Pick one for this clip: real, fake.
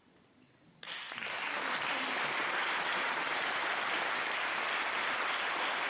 real